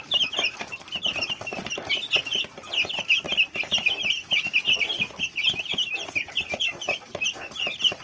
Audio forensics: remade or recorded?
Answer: recorded